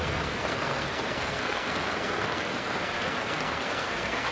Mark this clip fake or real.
fake